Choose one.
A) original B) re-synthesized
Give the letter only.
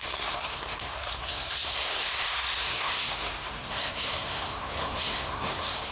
B